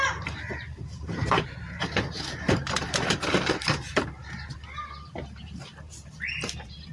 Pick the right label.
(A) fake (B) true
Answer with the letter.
A